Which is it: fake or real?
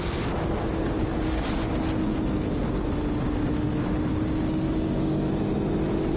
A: real